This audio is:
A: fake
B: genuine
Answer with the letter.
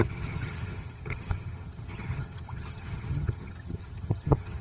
A